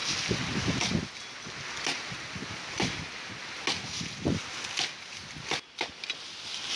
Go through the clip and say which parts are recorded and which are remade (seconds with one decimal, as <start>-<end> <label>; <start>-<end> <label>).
0.0-6.8 recorded